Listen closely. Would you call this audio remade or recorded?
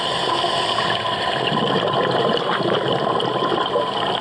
recorded